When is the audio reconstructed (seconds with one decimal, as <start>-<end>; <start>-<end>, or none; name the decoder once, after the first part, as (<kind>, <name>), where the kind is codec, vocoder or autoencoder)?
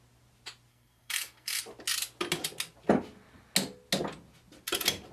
0.7-1.6 (codec, SNAC)